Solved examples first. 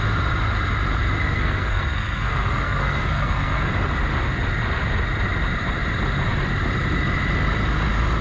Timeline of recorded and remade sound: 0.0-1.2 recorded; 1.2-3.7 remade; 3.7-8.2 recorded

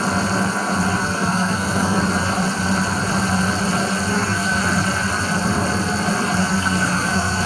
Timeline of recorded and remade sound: 0.0-1.0 recorded; 1.0-2.0 remade; 2.0-4.1 recorded; 4.1-4.6 remade; 4.6-6.4 recorded; 6.4-7.5 remade

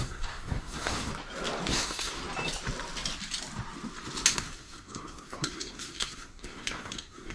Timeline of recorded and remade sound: 0.0-1.1 remade; 1.1-1.7 recorded; 1.7-2.2 remade; 2.2-4.3 recorded; 4.3-7.3 remade

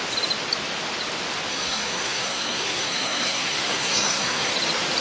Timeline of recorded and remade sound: 0.0-1.5 recorded; 1.5-4.5 remade; 4.5-5.0 recorded

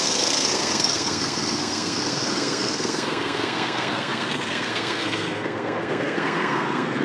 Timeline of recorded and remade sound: 0.0-7.0 remade

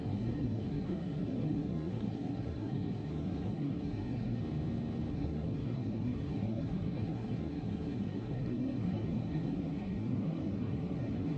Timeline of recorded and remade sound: 0.0-4.4 remade; 4.4-5.1 recorded; 5.1-11.4 remade

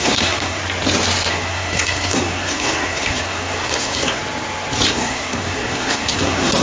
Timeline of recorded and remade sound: 0.0-0.6 remade; 0.6-1.3 recorded; 1.3-4.2 remade; 4.2-4.9 recorded; 4.9-6.6 remade

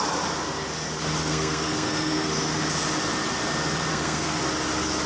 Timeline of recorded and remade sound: 0.0-1.2 recorded; 1.2-2.3 remade; 2.3-3.9 recorded; 3.9-4.4 remade; 4.4-5.1 recorded